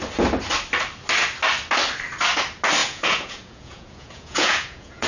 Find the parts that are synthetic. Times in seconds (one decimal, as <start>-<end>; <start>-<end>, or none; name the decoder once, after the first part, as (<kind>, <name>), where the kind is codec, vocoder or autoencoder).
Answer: 2.8-5.1 (vocoder, Vocos)